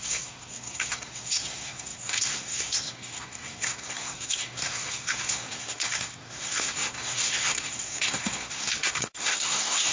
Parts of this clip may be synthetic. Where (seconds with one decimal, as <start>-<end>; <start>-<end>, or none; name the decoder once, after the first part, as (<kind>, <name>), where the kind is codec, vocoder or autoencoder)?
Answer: 0.0-9.9 (codec, SNAC)

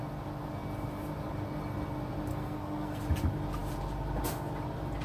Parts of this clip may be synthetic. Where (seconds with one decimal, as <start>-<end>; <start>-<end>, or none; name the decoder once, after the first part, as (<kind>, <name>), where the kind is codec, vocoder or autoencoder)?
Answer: 2.3-3.0 (codec, SNAC)

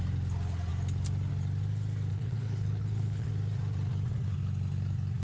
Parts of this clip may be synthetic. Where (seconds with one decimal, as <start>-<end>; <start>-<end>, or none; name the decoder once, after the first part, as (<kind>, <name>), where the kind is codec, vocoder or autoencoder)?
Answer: 2.1-3.3 (codec, HILCodec)

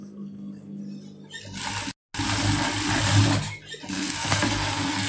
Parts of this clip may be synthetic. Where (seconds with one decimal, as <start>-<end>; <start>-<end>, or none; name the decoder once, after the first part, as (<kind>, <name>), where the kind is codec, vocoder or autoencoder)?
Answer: 0.0-0.8 (codec, SNAC); 3.9-5.1

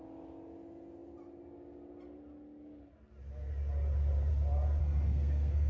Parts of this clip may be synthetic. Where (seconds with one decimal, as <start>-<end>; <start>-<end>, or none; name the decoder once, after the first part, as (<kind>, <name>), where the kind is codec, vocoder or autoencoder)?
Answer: 4.8-5.7 (codec, SNAC)

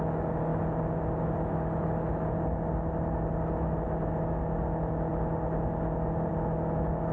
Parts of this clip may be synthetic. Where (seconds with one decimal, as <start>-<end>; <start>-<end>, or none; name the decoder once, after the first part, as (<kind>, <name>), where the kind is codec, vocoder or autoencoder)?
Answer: none

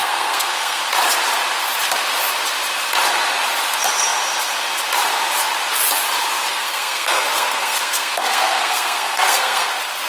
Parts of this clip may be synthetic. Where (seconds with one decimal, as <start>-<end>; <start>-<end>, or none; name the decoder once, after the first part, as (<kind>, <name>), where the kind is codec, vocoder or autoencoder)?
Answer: 0.0-0.8 (codec, SNAC); 6.5-9.7

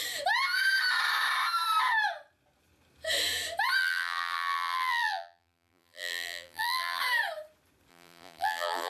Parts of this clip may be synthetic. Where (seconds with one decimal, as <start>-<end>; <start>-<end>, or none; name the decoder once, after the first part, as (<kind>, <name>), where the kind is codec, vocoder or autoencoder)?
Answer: 3.8-7.0 (vocoder, BigVGAN v2); 7.9-8.9